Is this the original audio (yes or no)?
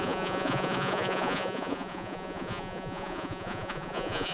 no